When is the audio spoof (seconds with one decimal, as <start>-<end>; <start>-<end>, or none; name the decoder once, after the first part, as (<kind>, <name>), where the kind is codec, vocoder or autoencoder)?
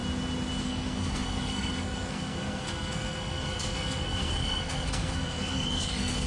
0.6-6.3 (codec, SNAC)